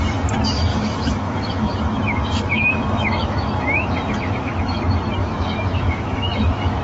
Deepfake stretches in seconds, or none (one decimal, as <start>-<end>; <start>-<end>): 0.7-4.8; 5.2-6.8